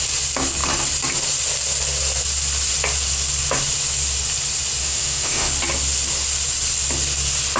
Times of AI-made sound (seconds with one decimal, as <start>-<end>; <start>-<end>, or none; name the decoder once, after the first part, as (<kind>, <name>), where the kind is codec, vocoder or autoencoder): 4.8-5.5 (autoencoder, DAC-VAE)